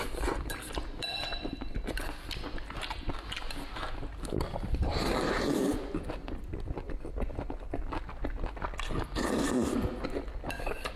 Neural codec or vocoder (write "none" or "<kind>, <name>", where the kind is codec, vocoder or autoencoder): none